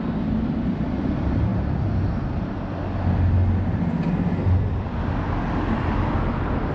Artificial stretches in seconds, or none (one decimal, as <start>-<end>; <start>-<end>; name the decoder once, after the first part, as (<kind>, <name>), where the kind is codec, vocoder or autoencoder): none